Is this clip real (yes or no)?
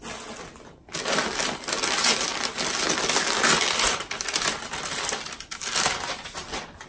yes